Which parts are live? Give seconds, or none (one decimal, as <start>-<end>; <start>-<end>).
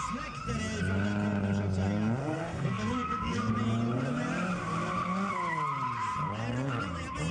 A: 0.0-2.2; 3.5-7.3